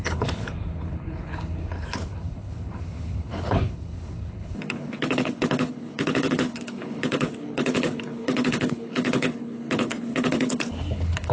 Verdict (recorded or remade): remade